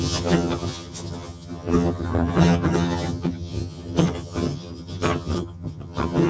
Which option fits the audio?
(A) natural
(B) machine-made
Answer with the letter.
B